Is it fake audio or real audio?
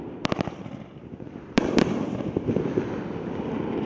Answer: fake